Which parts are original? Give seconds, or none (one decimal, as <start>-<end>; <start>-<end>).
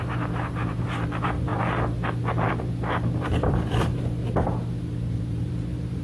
1.5-2.5; 4.2-5.2